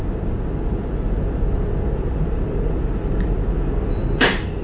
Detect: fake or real real